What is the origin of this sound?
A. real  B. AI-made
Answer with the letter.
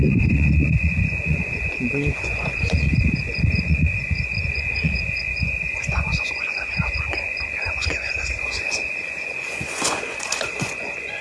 B